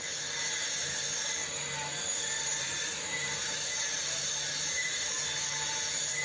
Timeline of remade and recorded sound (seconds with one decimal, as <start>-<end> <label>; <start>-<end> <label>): 0.0-2.5 recorded; 2.5-5.1 remade; 5.1-6.2 recorded